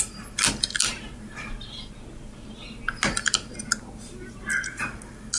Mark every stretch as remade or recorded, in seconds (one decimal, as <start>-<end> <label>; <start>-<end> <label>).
0.0-5.4 recorded